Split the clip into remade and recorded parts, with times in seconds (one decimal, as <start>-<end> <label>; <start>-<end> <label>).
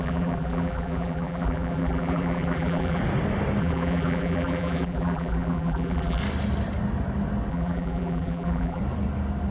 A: 0.0-3.0 remade; 3.0-3.6 recorded; 3.6-6.2 remade; 6.2-7.5 recorded; 7.5-8.8 remade; 8.8-9.5 recorded